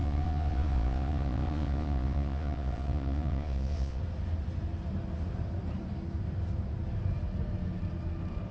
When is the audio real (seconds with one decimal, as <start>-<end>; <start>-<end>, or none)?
4.0-8.5